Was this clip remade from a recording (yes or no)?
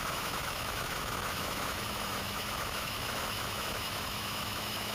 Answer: yes